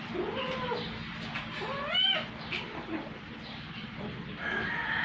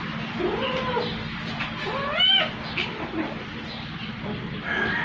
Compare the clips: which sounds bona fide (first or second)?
second